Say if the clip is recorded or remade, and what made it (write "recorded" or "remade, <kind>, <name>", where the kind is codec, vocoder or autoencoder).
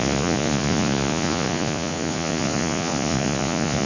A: remade, vocoder, Vocos